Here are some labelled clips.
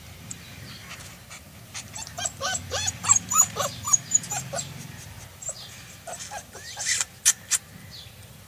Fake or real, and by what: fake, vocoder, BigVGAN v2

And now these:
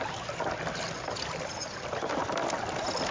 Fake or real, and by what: fake, vocoder, BigVGAN v2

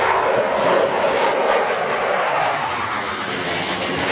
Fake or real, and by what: real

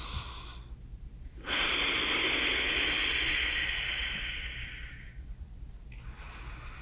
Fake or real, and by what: real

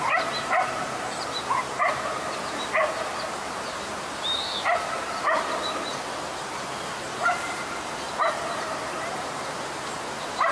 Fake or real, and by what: fake, vocoder, BigVGAN v2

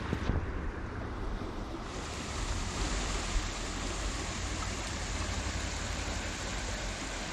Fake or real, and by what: fake, vocoder, BigVGAN v2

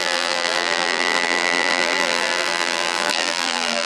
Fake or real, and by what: fake, vocoder, BigVGAN v2